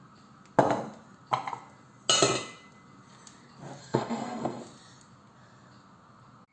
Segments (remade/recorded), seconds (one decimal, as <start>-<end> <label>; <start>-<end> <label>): 0.0-3.8 recorded; 3.8-4.6 remade; 4.6-6.5 recorded